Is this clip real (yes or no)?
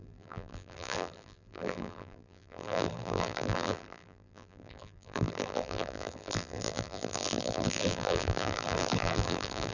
no